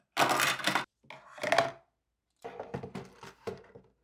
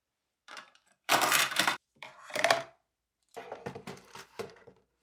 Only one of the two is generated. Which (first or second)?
second